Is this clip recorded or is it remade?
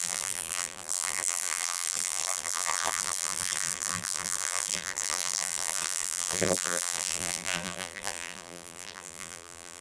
remade